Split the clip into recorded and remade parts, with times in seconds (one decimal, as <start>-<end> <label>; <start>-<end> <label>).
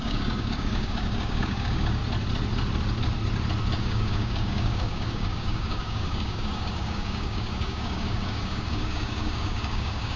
0.0-2.0 remade; 2.0-3.8 recorded; 3.8-10.2 remade